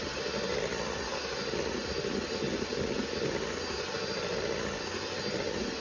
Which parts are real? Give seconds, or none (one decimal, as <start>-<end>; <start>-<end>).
0.0-5.8